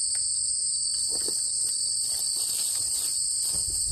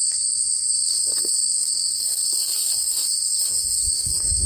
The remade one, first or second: second